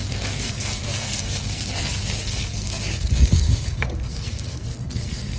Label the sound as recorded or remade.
remade